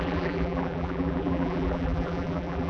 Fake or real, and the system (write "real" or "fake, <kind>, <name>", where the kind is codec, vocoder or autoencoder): fake, vocoder, BigVGAN v2